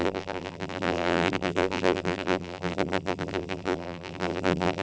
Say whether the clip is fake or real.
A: fake